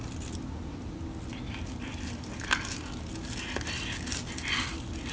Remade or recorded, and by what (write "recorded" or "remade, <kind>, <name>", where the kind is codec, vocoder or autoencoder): recorded